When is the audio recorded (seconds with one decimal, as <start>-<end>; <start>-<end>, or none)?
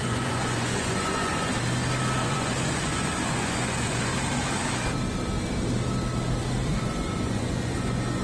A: 1.5-2.2; 4.1-6.7